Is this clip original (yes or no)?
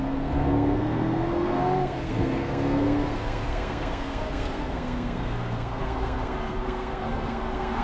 no